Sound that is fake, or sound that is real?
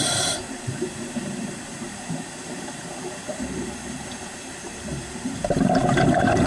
fake